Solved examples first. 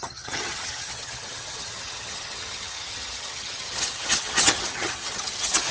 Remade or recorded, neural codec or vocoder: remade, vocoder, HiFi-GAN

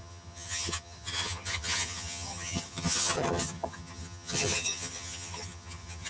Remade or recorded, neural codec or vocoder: remade, vocoder, HiFi-GAN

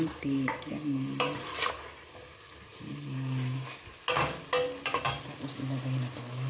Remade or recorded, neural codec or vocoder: recorded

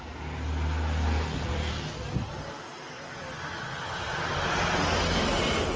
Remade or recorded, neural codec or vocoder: recorded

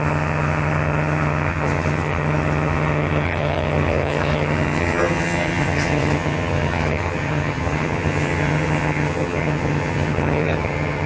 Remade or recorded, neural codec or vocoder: remade, vocoder, HiFi-GAN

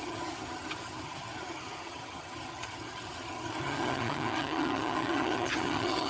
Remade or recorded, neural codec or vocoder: remade, vocoder, HiFi-GAN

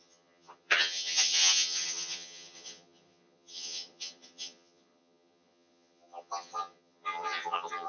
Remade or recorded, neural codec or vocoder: remade, vocoder, HiFi-GAN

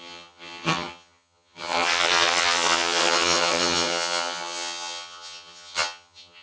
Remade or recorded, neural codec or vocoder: remade, vocoder, HiFi-GAN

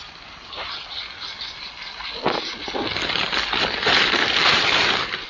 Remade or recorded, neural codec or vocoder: recorded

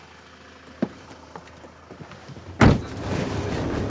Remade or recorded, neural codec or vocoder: recorded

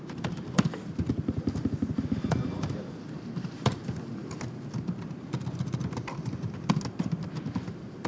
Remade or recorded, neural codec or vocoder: recorded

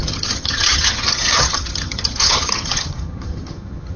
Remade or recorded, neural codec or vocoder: remade, vocoder, HiFi-GAN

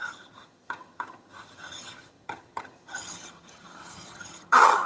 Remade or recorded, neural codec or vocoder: remade, vocoder, HiFi-GAN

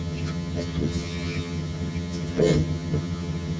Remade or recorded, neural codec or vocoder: remade, vocoder, HiFi-GAN